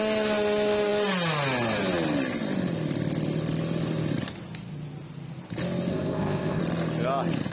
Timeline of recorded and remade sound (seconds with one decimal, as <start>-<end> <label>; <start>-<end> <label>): 0.0-5.9 recorded; 5.9-6.6 remade; 6.6-7.5 recorded